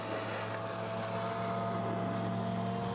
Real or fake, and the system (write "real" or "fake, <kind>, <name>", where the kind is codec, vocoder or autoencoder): real